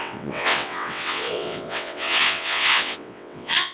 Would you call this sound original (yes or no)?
no